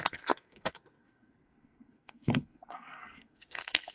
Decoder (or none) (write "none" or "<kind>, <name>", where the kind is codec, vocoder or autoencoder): codec, SNAC